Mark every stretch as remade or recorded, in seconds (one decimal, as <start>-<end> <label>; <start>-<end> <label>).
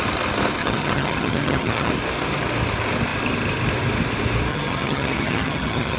0.0-0.6 recorded; 0.6-1.9 remade; 1.9-4.5 recorded; 4.5-6.0 remade